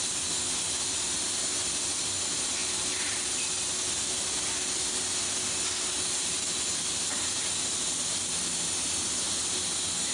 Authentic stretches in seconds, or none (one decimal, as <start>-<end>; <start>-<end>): 0.0-10.1